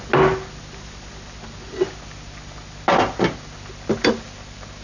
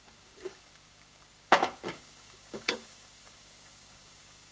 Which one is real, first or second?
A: first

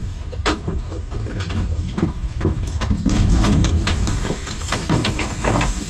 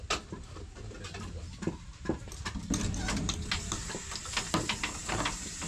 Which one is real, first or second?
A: second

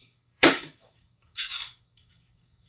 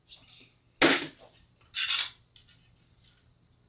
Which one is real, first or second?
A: second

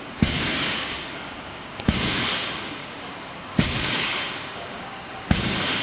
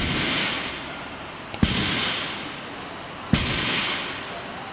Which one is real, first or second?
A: second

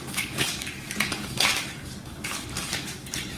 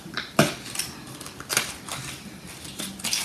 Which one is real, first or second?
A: second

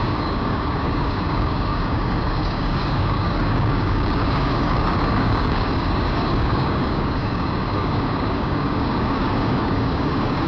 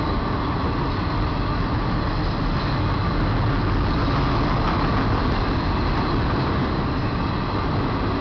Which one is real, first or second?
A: second